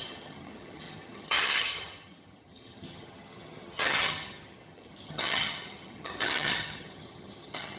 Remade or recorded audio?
remade